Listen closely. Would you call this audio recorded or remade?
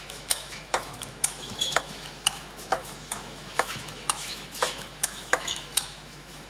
remade